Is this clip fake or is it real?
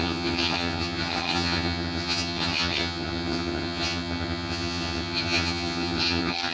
fake